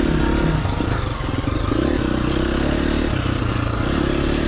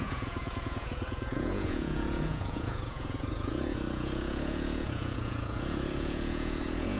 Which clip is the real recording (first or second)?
first